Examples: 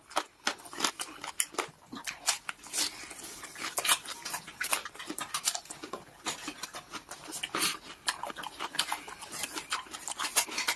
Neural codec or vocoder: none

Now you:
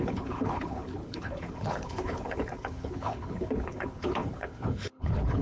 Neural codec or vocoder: codec, HILCodec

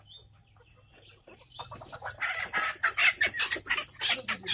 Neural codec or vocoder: none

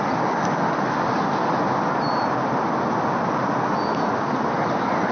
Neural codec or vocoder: none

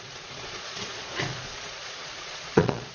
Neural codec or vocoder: vocoder, Vocos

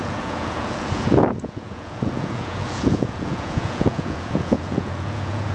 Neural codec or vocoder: vocoder, Vocos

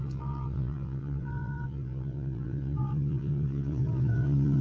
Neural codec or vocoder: vocoder, WaveNeXt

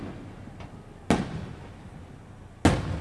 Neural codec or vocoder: none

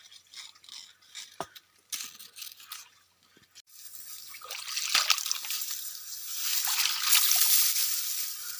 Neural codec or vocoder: none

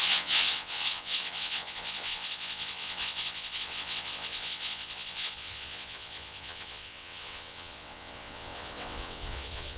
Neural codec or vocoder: vocoder, WaveNeXt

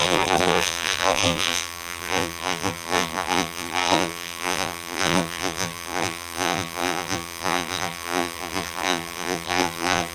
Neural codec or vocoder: vocoder, BigVGAN v2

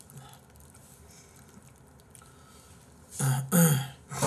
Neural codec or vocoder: none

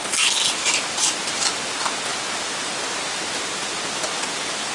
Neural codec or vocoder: none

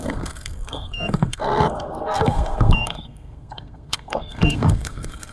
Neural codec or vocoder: codec, SNAC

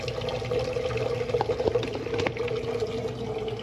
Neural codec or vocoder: none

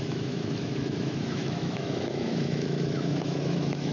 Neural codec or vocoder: autoencoder, DAC-VAE